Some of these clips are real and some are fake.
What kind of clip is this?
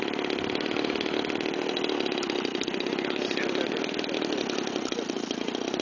real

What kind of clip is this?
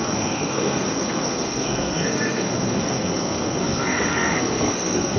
fake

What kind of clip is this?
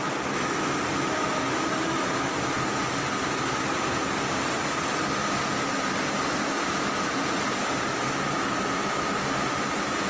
real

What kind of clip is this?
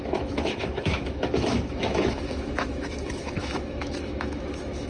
fake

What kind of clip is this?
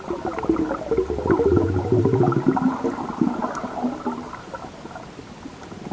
real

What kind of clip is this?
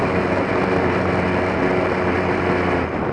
real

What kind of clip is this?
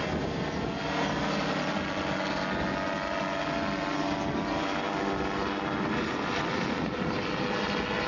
real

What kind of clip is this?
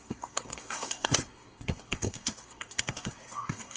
fake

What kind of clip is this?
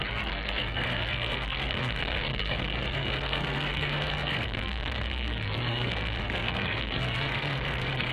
fake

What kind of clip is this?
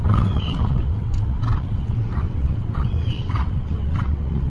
fake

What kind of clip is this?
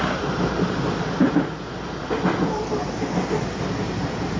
real